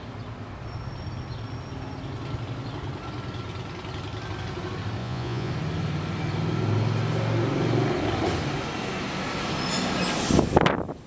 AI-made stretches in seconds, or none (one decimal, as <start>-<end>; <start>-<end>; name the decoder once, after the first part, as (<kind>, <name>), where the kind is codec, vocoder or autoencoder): 5.0-5.5 (vocoder, Vocos)